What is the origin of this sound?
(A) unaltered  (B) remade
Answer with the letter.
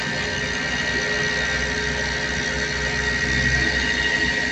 A